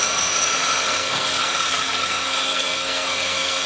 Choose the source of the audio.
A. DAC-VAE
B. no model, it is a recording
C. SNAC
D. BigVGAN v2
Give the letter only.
C